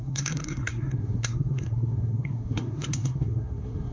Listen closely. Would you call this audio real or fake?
fake